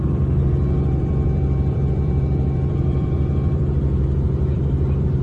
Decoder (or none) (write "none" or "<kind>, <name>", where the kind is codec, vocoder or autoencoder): vocoder, BigVGAN v2